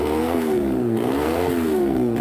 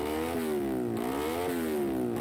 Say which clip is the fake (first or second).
first